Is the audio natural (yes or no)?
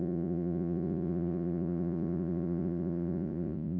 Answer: no